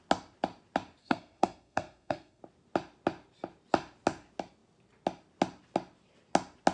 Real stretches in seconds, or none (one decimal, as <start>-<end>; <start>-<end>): 0.0-1.0; 2.4-6.7